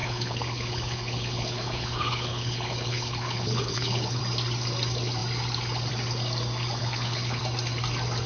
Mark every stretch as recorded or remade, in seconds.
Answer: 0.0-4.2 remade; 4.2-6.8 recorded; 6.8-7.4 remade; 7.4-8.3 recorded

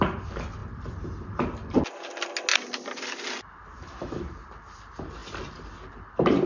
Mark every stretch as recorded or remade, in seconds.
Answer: 0.0-6.5 recorded

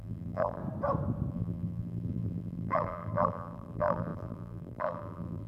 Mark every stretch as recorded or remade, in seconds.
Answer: 0.0-0.6 remade; 0.6-1.3 recorded; 1.3-5.5 remade

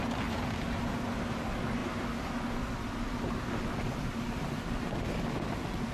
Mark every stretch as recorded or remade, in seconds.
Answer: 0.0-5.9 recorded

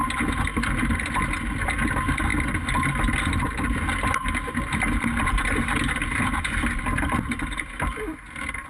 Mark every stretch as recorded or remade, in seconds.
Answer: 0.0-8.7 recorded

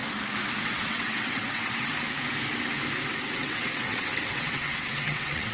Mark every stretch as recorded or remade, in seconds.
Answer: 0.0-0.6 recorded; 0.6-1.9 remade; 1.9-3.1 recorded; 3.1-5.5 remade